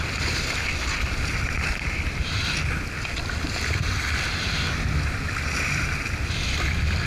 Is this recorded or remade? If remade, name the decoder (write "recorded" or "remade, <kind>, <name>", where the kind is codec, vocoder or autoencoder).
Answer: recorded